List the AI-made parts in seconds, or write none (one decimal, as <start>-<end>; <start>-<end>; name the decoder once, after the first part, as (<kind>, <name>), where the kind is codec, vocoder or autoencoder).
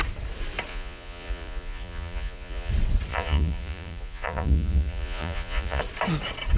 0.7-2.7 (vocoder, Vocos); 3.1-5.8